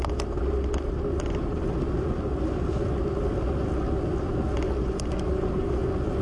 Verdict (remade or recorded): recorded